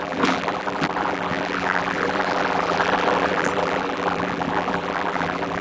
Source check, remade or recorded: remade